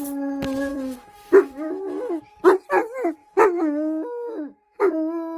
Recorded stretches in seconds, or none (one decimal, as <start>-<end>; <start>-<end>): 0.0-0.7; 2.2-3.2; 4.9-5.4